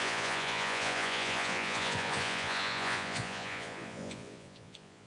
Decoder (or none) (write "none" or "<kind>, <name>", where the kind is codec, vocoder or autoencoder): vocoder, Vocos